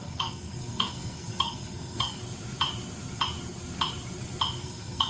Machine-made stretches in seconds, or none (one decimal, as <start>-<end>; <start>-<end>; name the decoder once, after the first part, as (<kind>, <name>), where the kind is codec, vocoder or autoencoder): 0.0-2.2 (codec, SNAC); 4.6-5.1